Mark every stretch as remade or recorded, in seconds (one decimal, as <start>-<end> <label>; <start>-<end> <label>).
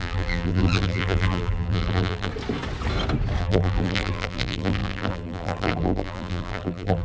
0.0-2.3 remade; 2.3-3.4 recorded; 3.4-7.0 remade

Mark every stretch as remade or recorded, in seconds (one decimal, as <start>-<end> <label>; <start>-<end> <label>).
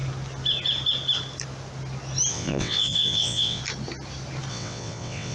0.0-2.3 recorded; 2.3-3.6 remade; 3.6-4.5 recorded; 4.5-5.3 remade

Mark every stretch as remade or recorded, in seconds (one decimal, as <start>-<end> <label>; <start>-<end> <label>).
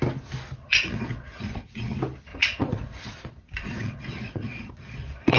0.0-0.7 recorded; 0.7-1.9 remade; 1.9-2.3 recorded; 2.3-5.4 remade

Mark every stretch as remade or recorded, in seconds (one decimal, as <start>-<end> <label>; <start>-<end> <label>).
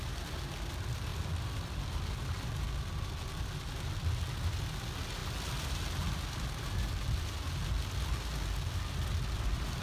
0.0-9.8 recorded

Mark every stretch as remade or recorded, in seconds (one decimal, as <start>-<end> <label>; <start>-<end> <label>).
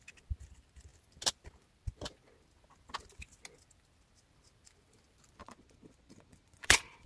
0.0-5.4 recorded; 5.4-7.1 remade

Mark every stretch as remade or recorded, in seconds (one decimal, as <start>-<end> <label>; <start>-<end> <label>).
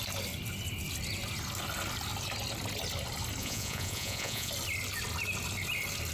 0.0-3.4 recorded; 3.4-4.5 remade; 4.5-6.1 recorded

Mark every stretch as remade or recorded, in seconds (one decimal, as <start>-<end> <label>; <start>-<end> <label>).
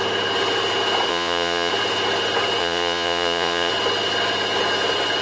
0.0-1.1 recorded; 1.1-1.7 remade; 1.7-2.6 recorded; 2.6-3.7 remade; 3.7-5.2 recorded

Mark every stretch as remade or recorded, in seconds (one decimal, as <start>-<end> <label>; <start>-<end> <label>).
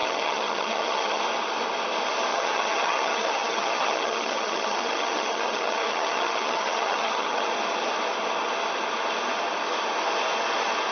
0.0-1.2 remade; 1.2-2.3 recorded; 2.3-7.5 remade; 7.5-10.9 recorded